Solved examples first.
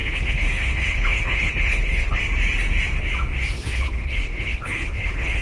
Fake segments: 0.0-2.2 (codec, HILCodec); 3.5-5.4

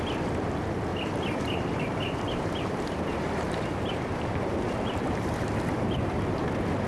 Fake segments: 0.9-4.3 (vocoder, BigVGAN v2)